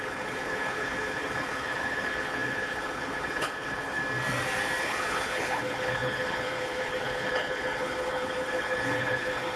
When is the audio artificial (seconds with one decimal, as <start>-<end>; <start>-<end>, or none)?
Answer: 0.0-4.0; 4.8-9.6